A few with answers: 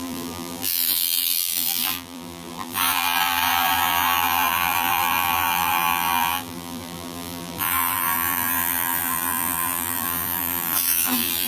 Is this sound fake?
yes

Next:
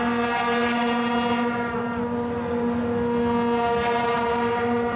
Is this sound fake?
no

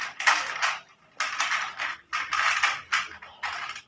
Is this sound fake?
no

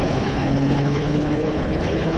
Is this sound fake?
yes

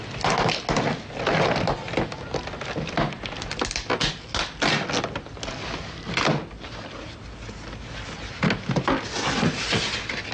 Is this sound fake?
no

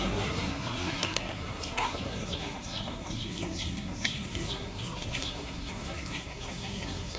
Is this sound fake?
yes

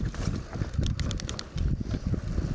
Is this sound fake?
no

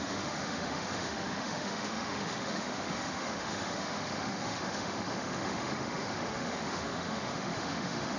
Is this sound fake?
yes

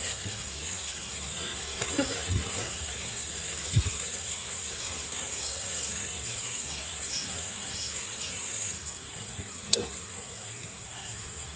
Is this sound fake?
yes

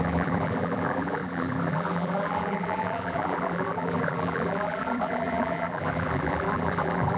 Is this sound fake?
yes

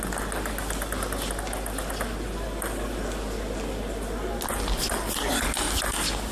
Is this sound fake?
no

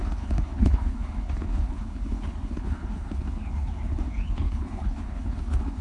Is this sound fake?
yes